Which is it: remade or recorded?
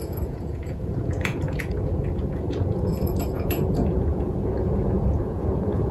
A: remade